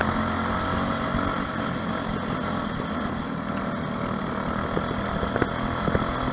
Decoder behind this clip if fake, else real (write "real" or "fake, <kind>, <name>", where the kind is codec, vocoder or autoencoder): real